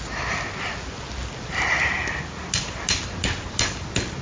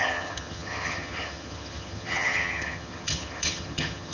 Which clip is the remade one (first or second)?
second